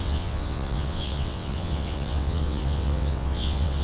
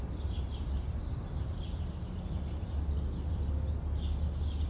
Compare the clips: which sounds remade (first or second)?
first